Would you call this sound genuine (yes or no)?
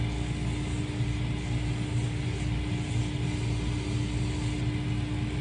yes